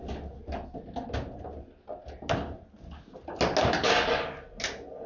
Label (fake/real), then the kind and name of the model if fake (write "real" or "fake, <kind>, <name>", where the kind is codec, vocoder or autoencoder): real